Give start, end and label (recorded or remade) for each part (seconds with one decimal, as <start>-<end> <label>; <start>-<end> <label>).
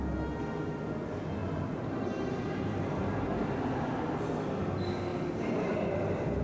0.0-1.4 recorded; 1.4-4.3 remade; 4.3-5.1 recorded; 5.1-5.7 remade; 5.7-6.4 recorded